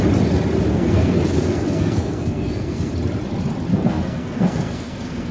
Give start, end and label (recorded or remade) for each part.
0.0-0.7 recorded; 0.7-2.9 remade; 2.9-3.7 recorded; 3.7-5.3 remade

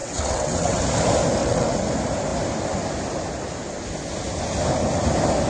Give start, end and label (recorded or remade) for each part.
0.0-0.8 remade; 0.8-1.4 recorded; 1.4-1.9 remade; 1.9-5.5 recorded

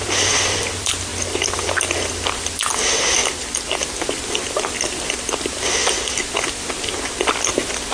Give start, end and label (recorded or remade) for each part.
0.0-7.9 recorded

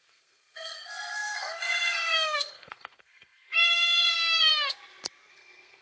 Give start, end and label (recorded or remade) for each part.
0.0-4.5 remade; 4.5-5.3 recorded; 5.3-5.8 remade

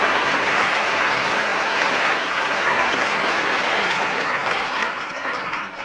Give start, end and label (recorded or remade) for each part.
0.0-5.8 remade

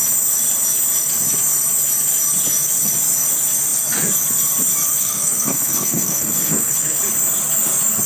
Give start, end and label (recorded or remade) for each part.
0.0-4.9 recorded; 4.9-7.0 remade; 7.0-8.1 recorded

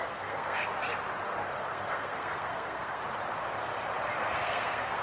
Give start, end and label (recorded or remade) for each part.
0.0-0.7 remade; 0.7-1.6 recorded; 1.6-3.0 remade; 3.0-4.2 recorded; 4.2-5.0 remade